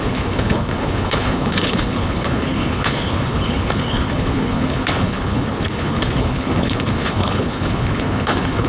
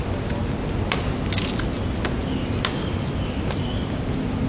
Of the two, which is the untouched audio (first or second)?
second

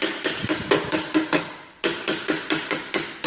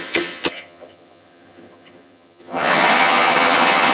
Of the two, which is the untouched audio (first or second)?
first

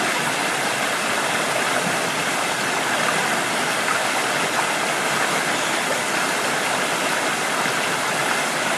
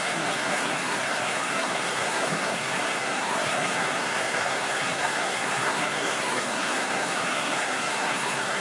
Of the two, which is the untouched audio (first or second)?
first